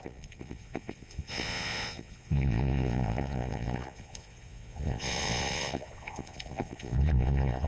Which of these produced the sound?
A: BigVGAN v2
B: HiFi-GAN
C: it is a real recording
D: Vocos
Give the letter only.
D